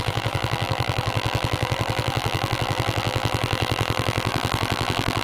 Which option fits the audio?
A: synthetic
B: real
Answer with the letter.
A